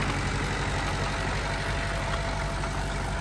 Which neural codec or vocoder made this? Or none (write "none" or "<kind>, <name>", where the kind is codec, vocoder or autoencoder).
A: none